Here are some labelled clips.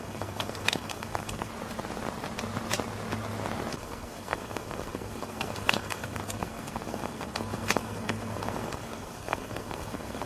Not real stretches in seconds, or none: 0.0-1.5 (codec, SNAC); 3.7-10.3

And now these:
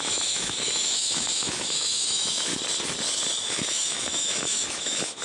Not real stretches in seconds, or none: 0.0-2.5 (autoencoder, DAC-VAE); 3.4-5.2

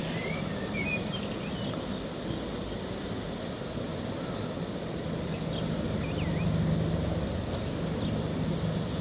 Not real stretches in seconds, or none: none

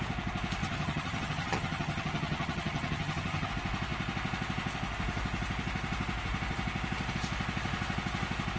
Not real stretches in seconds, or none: 0.6-3.5 (vocoder, HiFi-GAN)

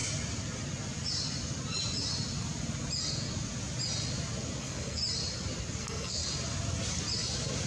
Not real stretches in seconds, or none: 4.6-5.0 (codec, SNAC); 5.8-6.2

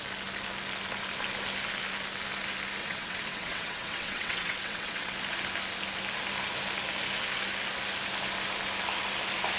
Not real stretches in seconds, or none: 2.8-5.1 (vocoder, WaveNeXt)

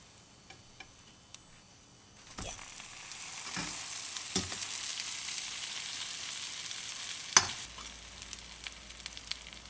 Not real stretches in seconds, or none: none

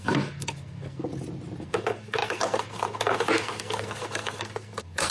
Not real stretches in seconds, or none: 0.0-1.1 (codec, SNAC); 1.6-5.1